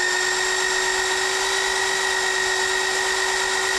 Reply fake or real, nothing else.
real